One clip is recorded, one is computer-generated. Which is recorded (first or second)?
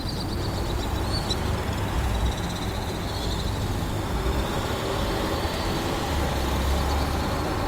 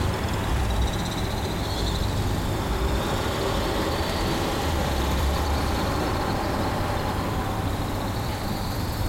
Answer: first